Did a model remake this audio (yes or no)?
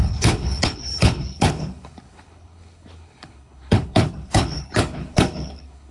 yes